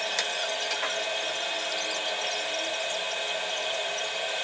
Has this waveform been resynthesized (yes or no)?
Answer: no